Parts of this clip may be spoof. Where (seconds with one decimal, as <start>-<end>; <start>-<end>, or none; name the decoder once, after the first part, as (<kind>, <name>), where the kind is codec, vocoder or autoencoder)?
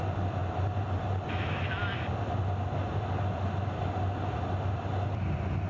none